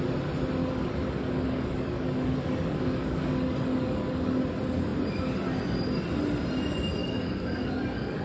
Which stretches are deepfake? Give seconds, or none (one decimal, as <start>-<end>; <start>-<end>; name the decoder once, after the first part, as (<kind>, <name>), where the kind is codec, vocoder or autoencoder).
0.6-4.4 (codec, DAC); 7.0-8.2